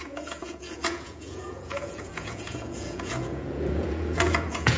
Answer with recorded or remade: remade